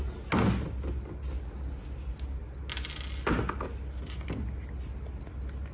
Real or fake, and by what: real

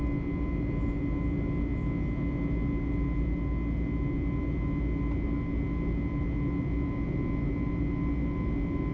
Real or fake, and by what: real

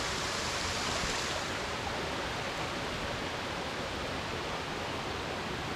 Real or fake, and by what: real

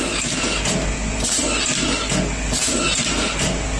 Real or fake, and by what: real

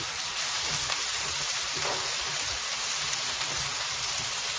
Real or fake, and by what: real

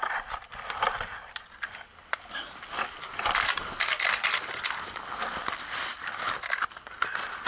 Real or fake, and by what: fake, vocoder, BigVGAN v2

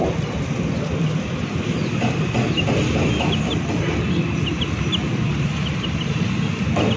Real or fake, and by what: real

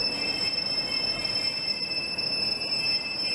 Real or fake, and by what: real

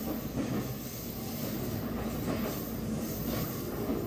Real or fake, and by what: real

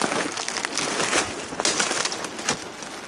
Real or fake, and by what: real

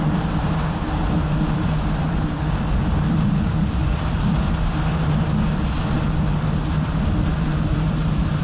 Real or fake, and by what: fake, vocoder, BigVGAN v2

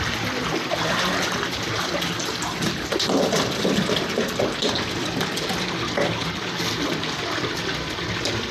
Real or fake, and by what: real